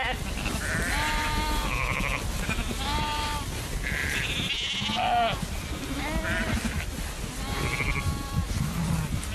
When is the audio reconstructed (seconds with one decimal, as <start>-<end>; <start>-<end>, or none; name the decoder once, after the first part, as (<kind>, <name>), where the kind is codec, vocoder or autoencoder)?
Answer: none